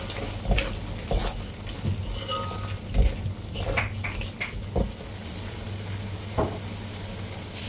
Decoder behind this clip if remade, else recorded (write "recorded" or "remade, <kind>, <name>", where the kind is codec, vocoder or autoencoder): recorded